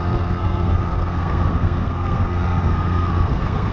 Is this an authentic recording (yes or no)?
no